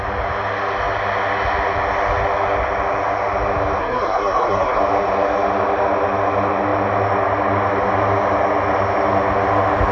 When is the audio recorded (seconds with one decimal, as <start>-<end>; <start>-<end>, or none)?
0.0-3.8; 4.8-9.9